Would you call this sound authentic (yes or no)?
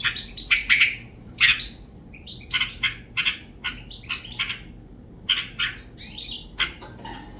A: yes